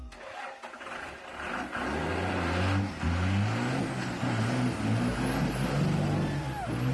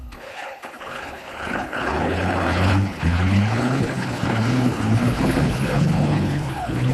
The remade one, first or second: second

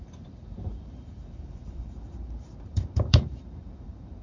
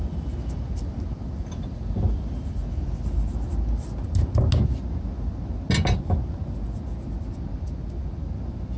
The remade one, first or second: first